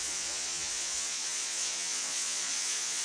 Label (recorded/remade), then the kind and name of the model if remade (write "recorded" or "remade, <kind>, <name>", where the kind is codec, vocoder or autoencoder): remade, vocoder, Vocos